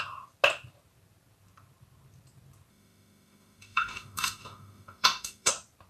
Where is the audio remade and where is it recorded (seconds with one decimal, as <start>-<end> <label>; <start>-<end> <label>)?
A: 0.0-2.7 recorded; 2.7-5.5 remade; 5.5-5.9 recorded